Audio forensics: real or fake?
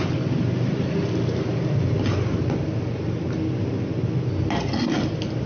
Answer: real